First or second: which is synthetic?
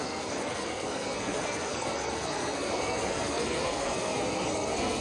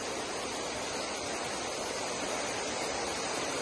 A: first